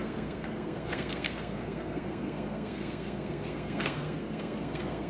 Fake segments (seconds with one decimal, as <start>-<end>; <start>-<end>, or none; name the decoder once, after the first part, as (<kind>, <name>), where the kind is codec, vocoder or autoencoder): 0.0-5.1 (codec, SNAC)